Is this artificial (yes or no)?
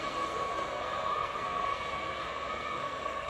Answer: yes